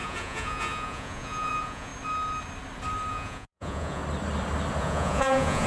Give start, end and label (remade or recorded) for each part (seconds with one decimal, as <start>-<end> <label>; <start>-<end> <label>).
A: 0.0-1.9 remade; 1.9-3.1 recorded; 3.1-4.0 remade; 4.0-4.8 recorded; 4.8-5.7 remade